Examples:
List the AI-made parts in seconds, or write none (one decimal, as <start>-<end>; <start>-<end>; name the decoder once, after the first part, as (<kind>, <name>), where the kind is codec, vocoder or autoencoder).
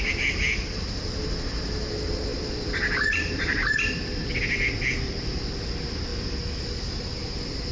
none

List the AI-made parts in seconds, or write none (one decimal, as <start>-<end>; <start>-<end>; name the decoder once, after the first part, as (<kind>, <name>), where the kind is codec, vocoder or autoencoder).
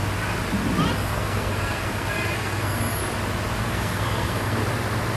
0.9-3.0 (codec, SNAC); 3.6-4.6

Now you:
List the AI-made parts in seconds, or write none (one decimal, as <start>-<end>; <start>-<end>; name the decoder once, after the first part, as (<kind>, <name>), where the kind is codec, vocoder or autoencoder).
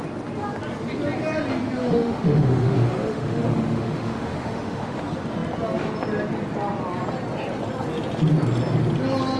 1.8-5.0 (autoencoder, DAC-VAE)